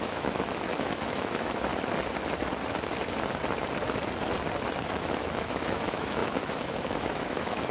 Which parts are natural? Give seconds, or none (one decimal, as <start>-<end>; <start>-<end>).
1.7-4.9